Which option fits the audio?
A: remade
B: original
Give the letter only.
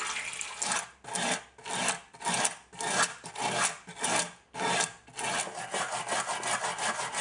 B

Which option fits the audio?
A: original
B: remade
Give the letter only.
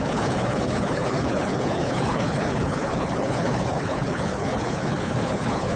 B